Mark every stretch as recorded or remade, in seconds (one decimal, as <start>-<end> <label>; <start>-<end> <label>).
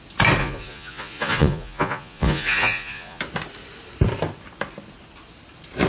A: 0.0-0.4 recorded; 0.4-3.2 remade; 3.2-5.9 recorded